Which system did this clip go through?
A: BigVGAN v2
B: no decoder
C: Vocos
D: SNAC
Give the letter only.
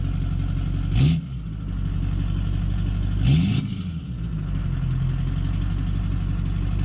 B